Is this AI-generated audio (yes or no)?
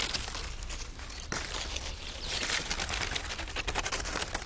no